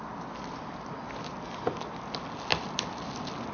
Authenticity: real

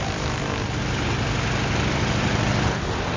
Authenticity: real